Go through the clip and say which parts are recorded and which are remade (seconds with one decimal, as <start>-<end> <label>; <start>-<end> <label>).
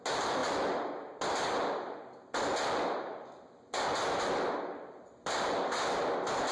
0.0-6.5 recorded